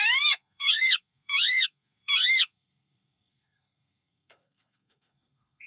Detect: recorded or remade remade